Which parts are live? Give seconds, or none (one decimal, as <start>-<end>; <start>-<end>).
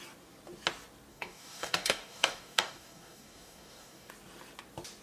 0.0-1.1; 4.1-5.0